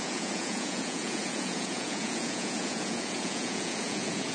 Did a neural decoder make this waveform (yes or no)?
yes